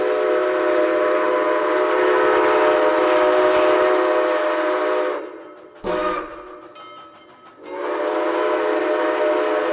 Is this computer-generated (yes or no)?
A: no